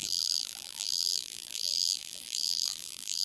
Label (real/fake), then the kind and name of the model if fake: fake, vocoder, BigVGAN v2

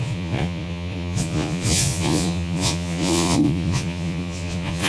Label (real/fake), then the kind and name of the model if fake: fake, vocoder, Vocos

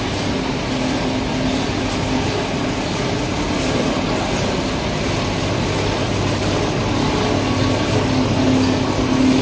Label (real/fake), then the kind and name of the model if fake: real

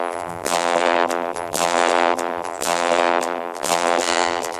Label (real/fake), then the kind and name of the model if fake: fake, vocoder, BigVGAN v2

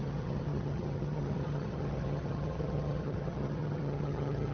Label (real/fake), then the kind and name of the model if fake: fake, vocoder, HiFi-GAN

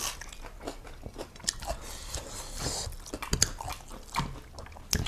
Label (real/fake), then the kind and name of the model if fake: real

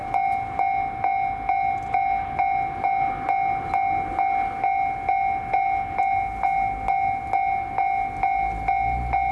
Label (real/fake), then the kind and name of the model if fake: real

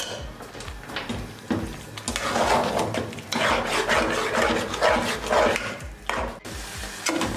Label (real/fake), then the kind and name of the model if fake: real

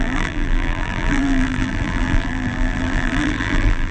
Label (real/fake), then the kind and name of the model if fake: fake, vocoder, BigVGAN v2